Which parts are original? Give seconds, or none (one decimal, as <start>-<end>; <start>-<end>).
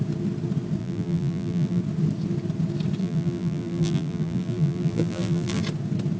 0.0-0.8; 1.8-3.0; 5.6-6.2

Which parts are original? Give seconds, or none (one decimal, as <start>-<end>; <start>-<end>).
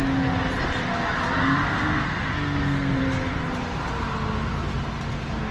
0.0-1.4; 3.0-5.5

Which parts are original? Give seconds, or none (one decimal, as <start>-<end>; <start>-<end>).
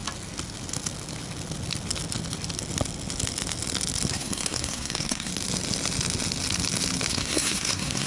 0.0-4.1; 5.3-7.1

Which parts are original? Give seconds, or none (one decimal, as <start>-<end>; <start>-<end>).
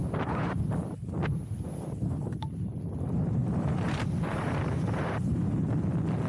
0.6-3.4; 5.7-6.3